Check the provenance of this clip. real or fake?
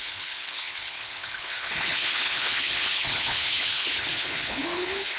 fake